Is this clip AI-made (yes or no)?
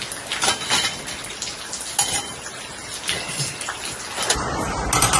no